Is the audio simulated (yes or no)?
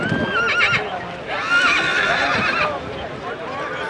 no